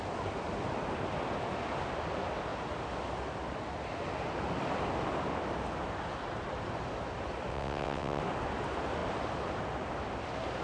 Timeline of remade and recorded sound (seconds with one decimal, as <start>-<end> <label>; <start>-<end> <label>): 0.0-7.5 recorded; 7.5-8.2 remade; 8.2-10.6 recorded